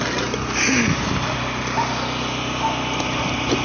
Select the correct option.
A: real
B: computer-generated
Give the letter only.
A